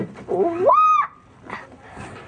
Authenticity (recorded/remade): recorded